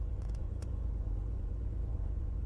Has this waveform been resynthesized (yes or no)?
yes